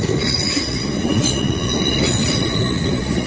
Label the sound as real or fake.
fake